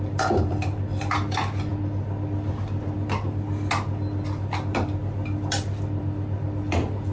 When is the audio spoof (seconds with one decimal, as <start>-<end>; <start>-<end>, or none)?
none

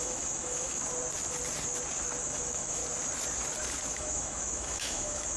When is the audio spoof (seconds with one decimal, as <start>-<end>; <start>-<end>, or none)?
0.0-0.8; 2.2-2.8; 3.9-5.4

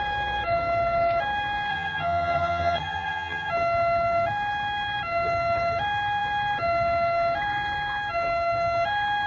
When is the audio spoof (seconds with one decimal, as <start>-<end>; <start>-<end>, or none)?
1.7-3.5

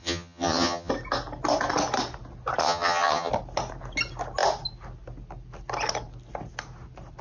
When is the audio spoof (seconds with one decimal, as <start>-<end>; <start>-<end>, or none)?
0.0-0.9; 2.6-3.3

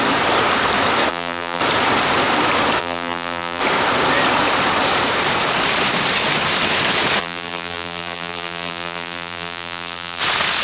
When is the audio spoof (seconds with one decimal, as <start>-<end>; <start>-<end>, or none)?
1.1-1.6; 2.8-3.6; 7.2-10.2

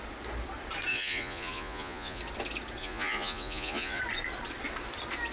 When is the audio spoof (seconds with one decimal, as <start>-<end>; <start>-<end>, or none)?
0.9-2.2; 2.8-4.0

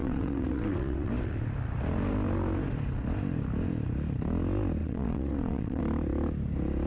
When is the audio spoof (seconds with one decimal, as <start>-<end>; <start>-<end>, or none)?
0.0-1.1; 4.8-5.8

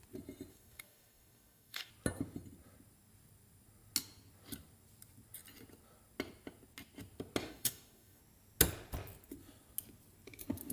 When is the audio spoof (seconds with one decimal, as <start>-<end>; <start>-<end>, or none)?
0.5-1.9; 7.4-8.2